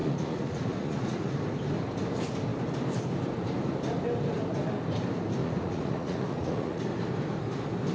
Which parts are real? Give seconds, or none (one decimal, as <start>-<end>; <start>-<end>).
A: 1.4-5.4; 6.8-7.9